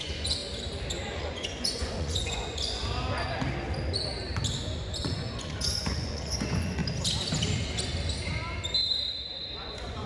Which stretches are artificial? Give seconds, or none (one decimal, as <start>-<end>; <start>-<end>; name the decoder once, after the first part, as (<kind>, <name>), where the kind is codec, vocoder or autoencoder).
0.0-0.4 (vocoder, Vocos); 1.2-2.8; 4.8-6.8; 9.6-10.1